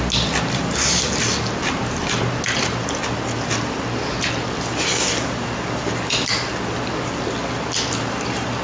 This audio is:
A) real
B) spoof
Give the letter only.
A